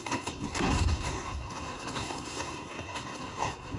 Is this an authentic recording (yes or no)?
no